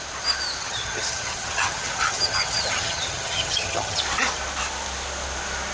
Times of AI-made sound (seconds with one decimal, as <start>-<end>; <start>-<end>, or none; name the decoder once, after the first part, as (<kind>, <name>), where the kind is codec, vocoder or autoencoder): 0.6-4.0 (vocoder, HiFi-GAN)